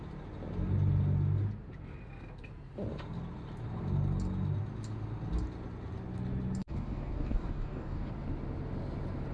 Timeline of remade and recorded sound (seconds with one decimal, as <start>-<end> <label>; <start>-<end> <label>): 0.0-6.6 recorded; 6.6-8.1 remade; 8.1-9.3 recorded